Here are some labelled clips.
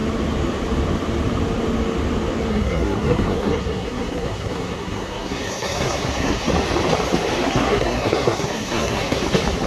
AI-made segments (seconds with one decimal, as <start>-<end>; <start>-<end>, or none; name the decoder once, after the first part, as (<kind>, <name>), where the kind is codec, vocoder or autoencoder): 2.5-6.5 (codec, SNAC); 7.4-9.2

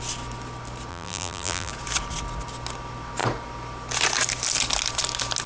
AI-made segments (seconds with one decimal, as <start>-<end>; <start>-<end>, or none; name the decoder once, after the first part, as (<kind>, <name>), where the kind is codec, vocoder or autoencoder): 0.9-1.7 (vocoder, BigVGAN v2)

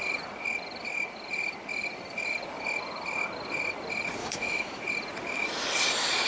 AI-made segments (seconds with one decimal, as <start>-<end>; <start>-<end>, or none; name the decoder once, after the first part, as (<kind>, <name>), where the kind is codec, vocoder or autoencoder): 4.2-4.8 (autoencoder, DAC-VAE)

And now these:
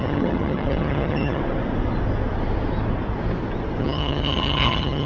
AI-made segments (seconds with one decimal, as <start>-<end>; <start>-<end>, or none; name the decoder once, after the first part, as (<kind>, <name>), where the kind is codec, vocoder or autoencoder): 0.0-1.4 (vocoder, HiFi-GAN); 3.8-5.1